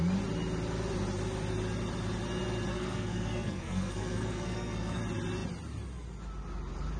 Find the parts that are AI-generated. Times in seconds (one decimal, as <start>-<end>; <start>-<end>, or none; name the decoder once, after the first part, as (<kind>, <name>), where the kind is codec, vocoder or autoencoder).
2.7-5.0 (codec, SNAC)